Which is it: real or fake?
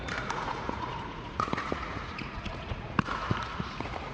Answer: fake